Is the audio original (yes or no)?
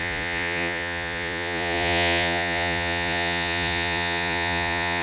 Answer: no